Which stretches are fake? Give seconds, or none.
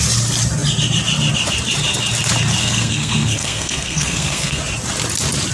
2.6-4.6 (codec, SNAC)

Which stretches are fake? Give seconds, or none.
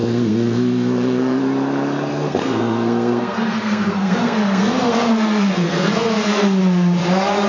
0.0-1.4 (codec, SNAC); 2.1-6.6